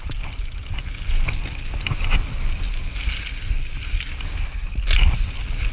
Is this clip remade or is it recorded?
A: recorded